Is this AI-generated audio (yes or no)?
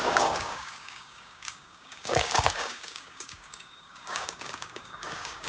yes